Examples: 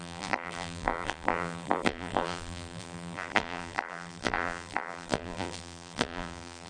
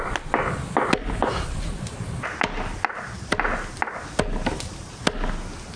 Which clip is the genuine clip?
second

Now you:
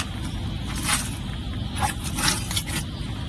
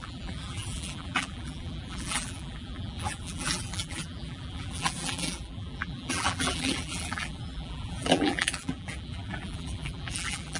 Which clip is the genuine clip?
first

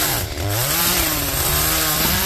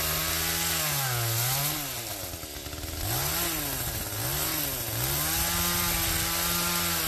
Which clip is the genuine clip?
second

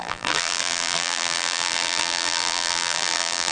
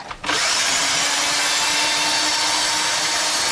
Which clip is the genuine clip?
second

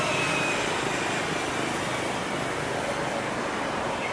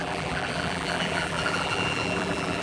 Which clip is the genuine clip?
first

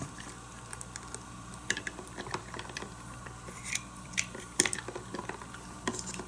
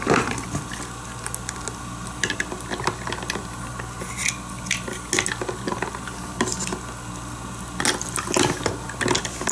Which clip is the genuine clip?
second